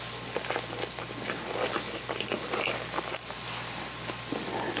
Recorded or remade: recorded